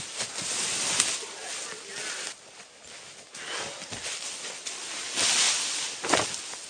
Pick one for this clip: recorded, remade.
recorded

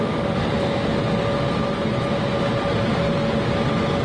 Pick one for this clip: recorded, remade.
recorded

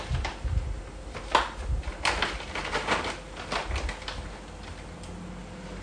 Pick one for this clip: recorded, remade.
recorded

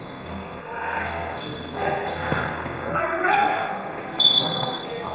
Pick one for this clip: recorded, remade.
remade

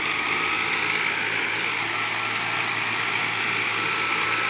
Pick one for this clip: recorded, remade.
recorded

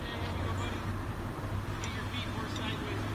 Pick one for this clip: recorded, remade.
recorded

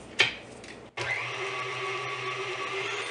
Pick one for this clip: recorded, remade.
recorded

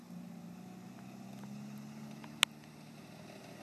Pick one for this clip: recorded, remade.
recorded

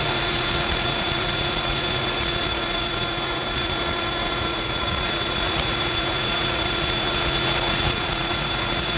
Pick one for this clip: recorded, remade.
remade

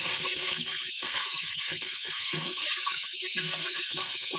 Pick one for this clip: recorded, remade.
remade